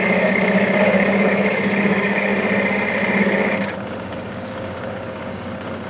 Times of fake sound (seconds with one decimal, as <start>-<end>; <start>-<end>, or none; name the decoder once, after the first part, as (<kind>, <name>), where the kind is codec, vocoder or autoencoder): 0.0-2.3 (codec, DAC); 3.2-5.9

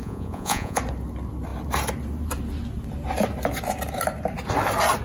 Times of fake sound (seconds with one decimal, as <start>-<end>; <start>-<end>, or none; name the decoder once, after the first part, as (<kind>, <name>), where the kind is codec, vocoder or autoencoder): 0.0-0.8 (vocoder, Vocos)

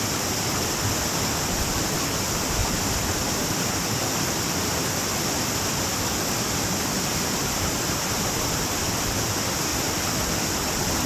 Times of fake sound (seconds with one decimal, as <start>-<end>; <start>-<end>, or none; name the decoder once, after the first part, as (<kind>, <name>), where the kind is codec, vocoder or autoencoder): 0.0-2.6 (vocoder, BigVGAN v2); 3.9-4.7; 5.9-9.7; 10.5-11.1

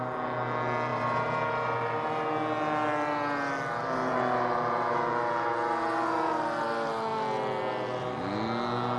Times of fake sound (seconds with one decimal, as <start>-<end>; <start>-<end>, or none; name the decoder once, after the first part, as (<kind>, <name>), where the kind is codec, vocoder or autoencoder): 0.9-2.3 (vocoder, BigVGAN v2); 4.1-6.4

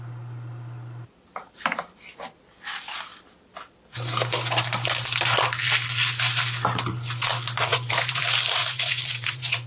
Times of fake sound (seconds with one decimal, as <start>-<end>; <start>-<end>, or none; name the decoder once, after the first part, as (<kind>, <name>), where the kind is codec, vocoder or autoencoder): 7.7-8.2 (vocoder, Vocos); 8.6-9.7

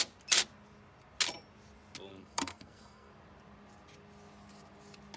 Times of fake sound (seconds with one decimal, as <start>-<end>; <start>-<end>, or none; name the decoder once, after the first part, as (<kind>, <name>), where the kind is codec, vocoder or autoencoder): 2.1-3.1 (codec, SNAC)

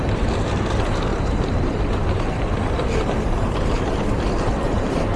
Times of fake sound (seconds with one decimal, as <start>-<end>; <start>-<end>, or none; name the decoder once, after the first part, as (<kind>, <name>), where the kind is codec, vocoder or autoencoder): 0.0-5.2 (vocoder, BigVGAN v2)